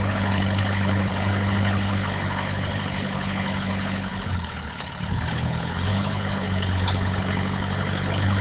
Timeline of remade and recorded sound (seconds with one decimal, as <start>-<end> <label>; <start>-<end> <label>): 0.0-8.4 remade